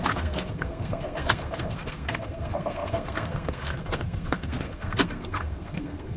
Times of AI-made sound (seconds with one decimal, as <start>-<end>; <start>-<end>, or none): 0.0-6.2

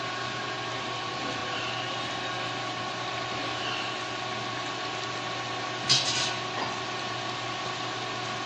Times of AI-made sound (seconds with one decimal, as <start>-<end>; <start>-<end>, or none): none

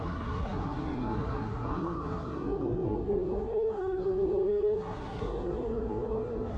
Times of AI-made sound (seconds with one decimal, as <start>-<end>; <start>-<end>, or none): 0.0-6.6